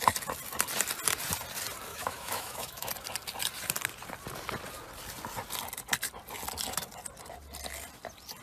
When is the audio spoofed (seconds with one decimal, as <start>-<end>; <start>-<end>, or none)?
1.9-2.9